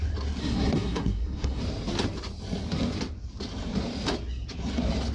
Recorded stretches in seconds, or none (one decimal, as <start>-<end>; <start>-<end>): 0.0-0.4; 1.6-5.1